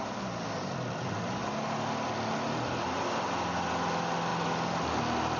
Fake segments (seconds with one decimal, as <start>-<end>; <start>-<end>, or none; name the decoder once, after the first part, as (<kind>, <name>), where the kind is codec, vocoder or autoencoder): none